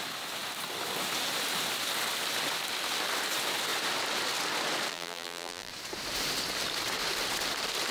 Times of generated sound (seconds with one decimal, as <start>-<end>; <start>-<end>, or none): 4.9-5.7